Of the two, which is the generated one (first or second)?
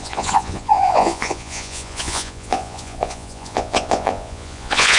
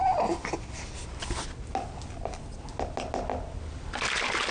first